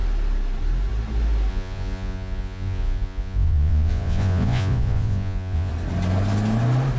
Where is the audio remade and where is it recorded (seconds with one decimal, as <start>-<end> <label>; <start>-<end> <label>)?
0.0-1.5 recorded; 1.5-5.7 remade; 5.7-7.0 recorded